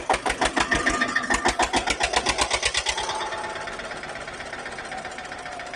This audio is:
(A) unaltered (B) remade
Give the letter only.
A